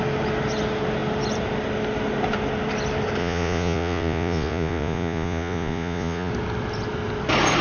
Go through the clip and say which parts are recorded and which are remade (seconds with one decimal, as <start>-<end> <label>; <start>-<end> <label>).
0.0-3.2 recorded; 3.2-6.3 remade; 6.3-7.6 recorded